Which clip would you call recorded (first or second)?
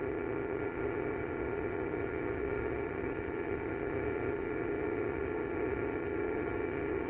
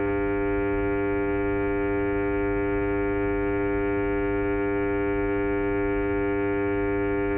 second